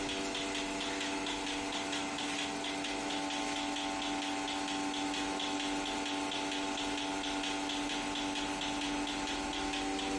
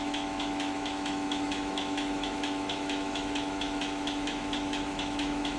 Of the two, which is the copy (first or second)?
second